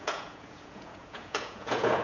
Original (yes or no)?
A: no